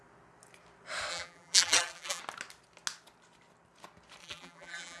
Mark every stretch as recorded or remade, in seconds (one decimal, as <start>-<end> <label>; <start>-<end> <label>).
0.0-1.1 recorded; 1.1-2.2 remade; 2.2-4.2 recorded; 4.2-5.0 remade

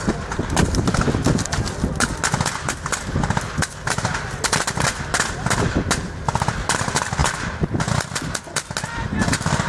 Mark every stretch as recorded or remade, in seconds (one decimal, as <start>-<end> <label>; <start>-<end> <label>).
0.0-9.7 recorded

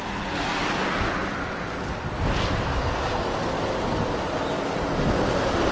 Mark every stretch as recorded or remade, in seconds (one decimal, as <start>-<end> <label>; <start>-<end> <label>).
0.0-5.7 recorded